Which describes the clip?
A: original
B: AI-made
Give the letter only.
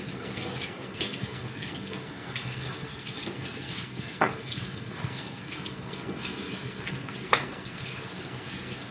B